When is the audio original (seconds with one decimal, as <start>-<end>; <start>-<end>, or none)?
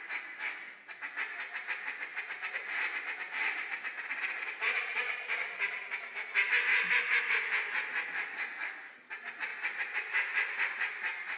0.0-2.1; 3.0-6.7; 7.2-9.5; 10.7-11.4